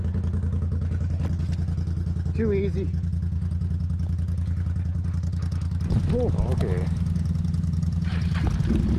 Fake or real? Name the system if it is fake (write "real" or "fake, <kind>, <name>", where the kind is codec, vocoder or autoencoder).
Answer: real